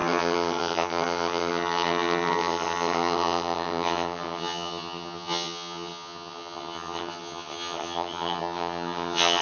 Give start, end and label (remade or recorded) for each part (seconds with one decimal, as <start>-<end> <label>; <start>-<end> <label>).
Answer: 0.0-9.4 remade